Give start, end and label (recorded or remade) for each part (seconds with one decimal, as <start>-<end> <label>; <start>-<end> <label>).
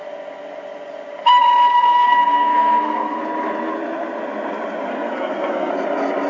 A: 0.0-1.7 recorded; 1.7-3.2 remade; 3.2-4.9 recorded; 4.9-5.7 remade; 5.7-6.3 recorded